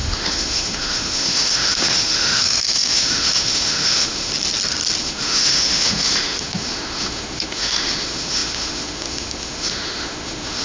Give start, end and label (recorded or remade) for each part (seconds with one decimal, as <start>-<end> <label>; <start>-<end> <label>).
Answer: 0.0-4.3 remade; 4.3-5.0 recorded; 5.0-10.6 remade